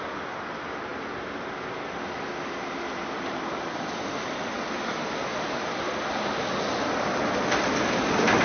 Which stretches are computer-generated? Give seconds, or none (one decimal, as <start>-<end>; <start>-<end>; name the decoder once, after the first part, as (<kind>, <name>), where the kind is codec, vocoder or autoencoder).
none